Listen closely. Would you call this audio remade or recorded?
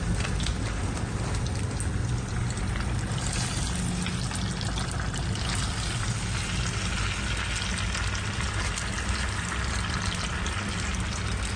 recorded